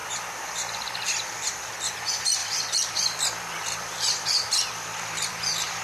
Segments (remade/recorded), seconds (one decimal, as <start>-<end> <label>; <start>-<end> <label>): 0.0-1.7 remade; 1.7-2.4 recorded; 2.4-5.8 remade